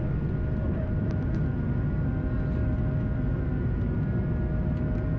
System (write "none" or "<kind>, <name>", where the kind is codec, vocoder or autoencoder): none